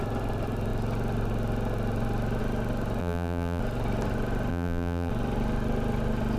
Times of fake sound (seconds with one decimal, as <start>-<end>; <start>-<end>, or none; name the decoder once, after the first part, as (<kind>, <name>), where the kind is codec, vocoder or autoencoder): 3.0-3.6 (vocoder, BigVGAN v2); 4.5-5.1